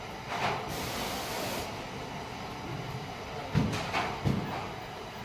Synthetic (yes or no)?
no